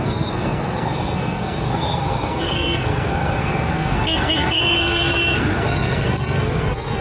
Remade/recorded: remade